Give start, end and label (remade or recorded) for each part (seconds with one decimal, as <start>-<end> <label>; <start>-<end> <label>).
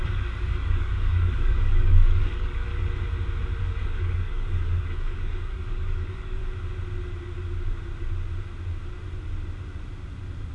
0.0-2.7 remade; 2.7-3.6 recorded; 3.6-6.4 remade; 6.4-10.5 recorded